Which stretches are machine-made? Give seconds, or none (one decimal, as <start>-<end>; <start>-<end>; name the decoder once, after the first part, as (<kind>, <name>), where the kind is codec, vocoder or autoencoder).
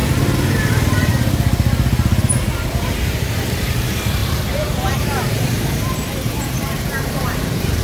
0.7-1.1 (vocoder, BigVGAN v2); 2.9-7.8